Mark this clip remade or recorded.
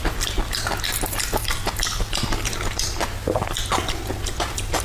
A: recorded